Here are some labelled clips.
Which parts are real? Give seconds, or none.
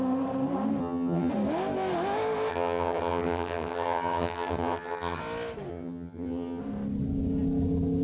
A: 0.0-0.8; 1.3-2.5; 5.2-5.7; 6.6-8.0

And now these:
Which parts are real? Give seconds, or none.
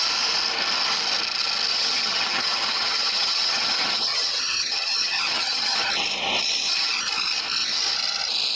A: 0.0-1.7; 5.9-8.6